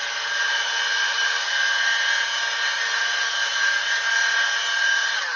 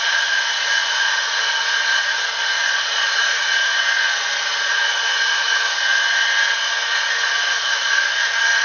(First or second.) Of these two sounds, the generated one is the second